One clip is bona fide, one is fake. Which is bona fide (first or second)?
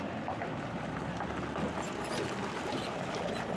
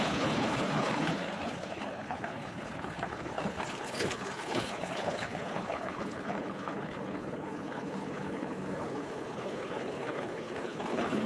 first